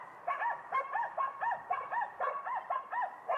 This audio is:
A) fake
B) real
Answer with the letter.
A